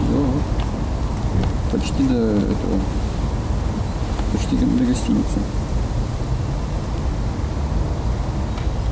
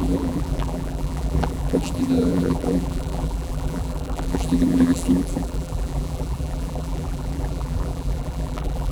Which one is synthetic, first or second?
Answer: second